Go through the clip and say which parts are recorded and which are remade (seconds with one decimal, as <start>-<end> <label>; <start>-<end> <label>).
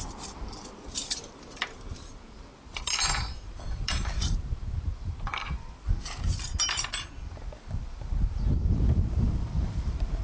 0.0-6.5 remade; 6.5-7.3 recorded; 7.3-10.2 remade